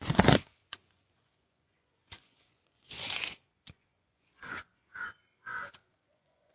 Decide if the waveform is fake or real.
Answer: fake